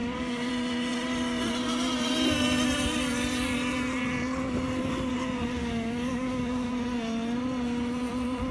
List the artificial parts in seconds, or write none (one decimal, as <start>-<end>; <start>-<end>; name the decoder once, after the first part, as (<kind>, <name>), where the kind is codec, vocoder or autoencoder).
0.0-0.5 (codec, DAC); 5.6-6.7

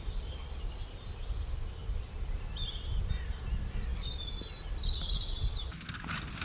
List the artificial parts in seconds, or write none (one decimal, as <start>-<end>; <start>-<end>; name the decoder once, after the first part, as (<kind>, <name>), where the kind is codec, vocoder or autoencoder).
none

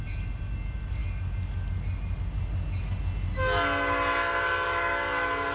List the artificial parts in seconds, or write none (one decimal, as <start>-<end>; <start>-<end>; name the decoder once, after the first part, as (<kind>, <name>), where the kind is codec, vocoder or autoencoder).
none

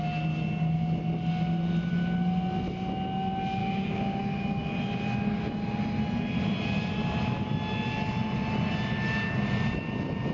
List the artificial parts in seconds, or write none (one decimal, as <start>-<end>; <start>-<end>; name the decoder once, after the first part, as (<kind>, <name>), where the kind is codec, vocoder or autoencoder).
3.6-4.2 (codec, DAC)